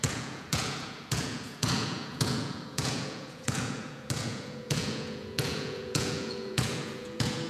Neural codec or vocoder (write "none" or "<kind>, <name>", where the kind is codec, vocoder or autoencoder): vocoder, Vocos